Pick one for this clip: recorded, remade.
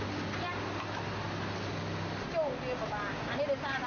recorded